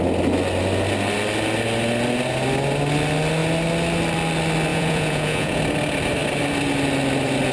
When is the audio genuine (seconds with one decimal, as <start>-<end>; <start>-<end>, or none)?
0.0-4.7; 5.6-7.5